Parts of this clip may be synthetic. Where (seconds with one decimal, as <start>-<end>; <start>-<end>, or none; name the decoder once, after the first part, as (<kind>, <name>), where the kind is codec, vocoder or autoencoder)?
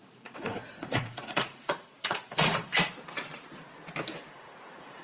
0.0-2.7 (vocoder, Vocos); 4.3-5.0